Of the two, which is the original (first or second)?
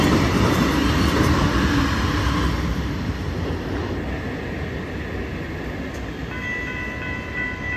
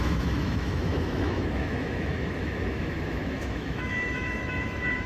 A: first